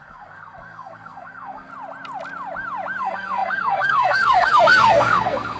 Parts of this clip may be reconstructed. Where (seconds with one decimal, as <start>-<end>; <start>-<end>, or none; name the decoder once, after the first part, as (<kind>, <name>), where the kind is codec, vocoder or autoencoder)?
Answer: 0.0-1.7 (codec, SNAC); 3.0-5.6